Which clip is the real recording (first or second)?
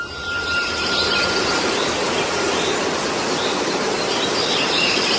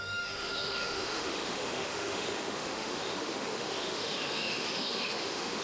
first